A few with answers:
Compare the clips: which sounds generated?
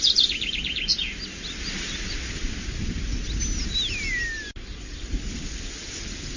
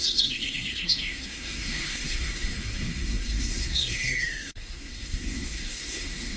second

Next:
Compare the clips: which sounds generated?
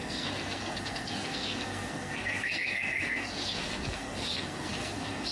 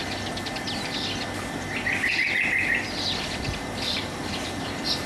first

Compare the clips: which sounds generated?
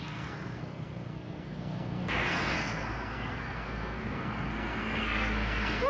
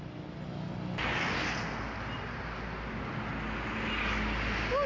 first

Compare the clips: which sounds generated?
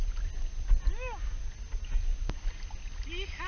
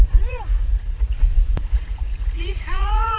second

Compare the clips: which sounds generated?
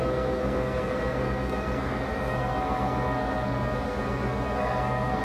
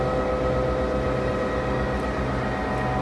first